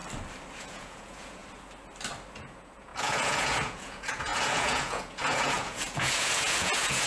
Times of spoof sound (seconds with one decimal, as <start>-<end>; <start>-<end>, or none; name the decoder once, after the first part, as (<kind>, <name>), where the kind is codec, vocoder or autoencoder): 0.6-1.4 (vocoder, Vocos); 2.3-7.1